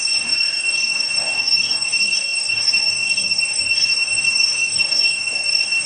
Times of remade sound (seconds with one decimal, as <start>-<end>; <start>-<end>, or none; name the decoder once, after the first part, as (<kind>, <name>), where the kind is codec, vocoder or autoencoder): 0.0-5.9 (codec, DAC)